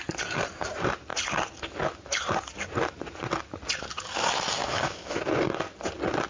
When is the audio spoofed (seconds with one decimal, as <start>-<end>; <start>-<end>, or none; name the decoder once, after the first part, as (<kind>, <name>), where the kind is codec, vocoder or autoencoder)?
4.6-5.2 (autoencoder, DAC-VAE)